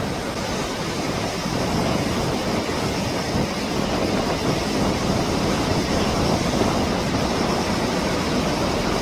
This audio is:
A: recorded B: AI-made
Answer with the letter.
A